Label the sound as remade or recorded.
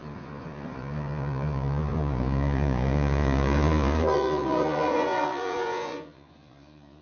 remade